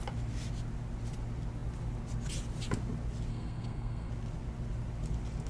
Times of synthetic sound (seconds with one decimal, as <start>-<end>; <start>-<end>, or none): 3.3-4.1